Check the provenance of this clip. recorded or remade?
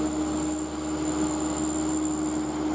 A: recorded